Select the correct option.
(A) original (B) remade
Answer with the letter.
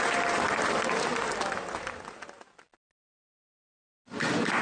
A